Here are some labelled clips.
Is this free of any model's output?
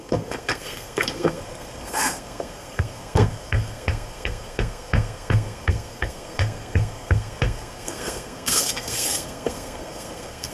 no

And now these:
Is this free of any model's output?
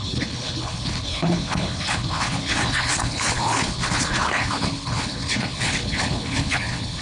no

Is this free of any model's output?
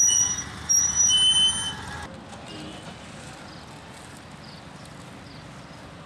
yes